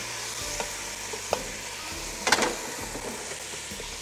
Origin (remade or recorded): recorded